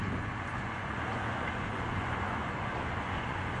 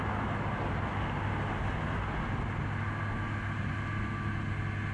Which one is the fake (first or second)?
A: first